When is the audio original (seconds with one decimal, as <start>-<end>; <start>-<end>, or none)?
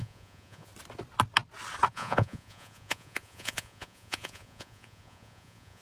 0.7-1.9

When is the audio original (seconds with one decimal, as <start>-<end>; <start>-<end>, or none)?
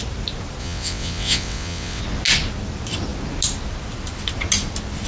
0.0-0.6; 2.0-5.1